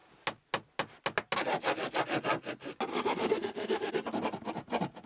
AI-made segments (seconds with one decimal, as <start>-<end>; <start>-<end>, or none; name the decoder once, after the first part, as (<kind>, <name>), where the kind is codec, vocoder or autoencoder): 2.9-3.9 (autoencoder, DAC-VAE)